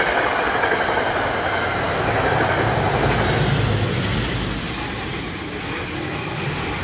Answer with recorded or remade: recorded